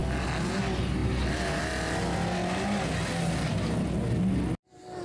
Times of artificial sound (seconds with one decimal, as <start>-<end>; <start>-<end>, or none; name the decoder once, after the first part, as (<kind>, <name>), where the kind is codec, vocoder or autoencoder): none